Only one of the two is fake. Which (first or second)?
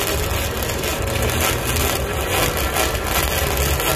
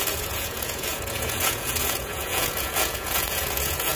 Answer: second